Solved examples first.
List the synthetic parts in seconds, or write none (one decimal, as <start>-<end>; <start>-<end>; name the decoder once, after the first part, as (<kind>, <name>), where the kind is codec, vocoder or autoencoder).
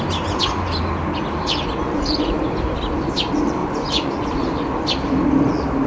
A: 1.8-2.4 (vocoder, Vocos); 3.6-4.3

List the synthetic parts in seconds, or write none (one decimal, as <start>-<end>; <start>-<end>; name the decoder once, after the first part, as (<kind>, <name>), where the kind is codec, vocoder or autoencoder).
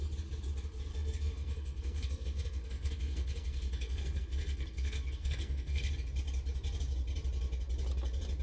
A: 0.9-5.9 (codec, SNAC)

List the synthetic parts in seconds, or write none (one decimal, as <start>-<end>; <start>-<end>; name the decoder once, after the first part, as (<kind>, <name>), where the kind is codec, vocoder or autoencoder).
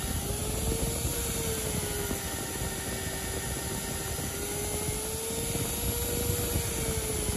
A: none